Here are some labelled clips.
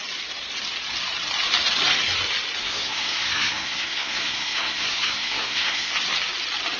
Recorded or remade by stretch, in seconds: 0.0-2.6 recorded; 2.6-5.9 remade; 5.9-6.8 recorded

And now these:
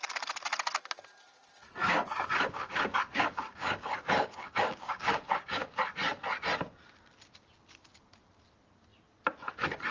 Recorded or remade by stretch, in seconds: 0.0-1.8 recorded; 1.8-5.8 remade; 5.8-9.9 recorded

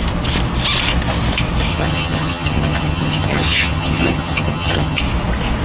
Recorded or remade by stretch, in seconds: 0.0-1.7 recorded; 1.7-5.0 remade; 5.0-5.6 recorded

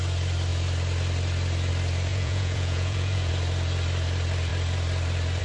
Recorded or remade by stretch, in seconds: 0.0-2.1 recorded; 2.1-3.3 remade; 3.3-5.4 recorded

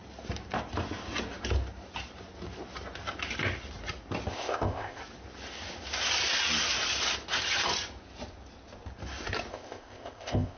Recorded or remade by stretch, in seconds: 0.0-4.3 recorded; 4.3-5.0 remade; 5.0-9.5 recorded; 9.5-10.6 remade